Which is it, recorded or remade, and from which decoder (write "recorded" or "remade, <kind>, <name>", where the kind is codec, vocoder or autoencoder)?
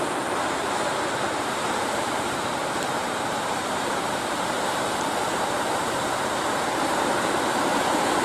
remade, vocoder, BigVGAN v2